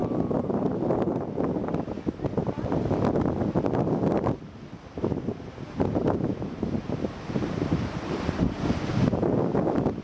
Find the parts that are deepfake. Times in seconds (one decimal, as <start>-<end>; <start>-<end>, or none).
6.0-8.9